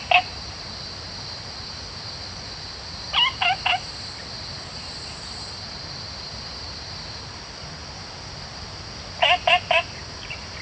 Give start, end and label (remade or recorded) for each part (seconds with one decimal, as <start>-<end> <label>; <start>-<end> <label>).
0.0-10.6 recorded